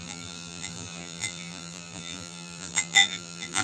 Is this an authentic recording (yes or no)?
no